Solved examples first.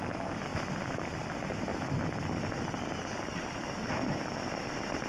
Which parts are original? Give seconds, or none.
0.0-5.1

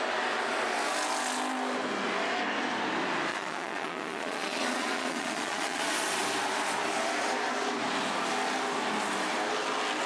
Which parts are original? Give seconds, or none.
0.0-3.3; 5.8-10.1

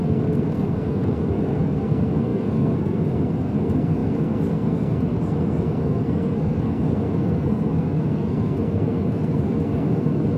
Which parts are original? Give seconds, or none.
none

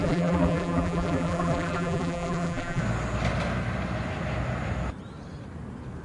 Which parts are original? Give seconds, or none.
2.8-6.0

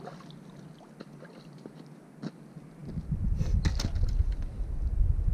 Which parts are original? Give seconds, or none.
0.0-5.3

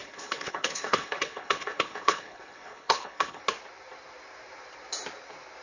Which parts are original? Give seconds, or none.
3.4-5.6

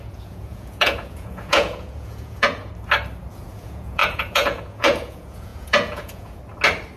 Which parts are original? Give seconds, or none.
2.7-3.3; 6.4-7.0